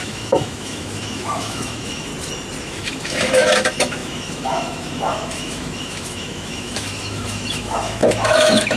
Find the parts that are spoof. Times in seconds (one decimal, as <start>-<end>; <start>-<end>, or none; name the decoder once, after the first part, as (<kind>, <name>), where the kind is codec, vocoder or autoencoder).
0.0-2.1 (autoencoder, DAC-VAE); 2.6-8.8